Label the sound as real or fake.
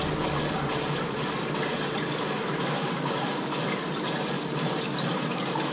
real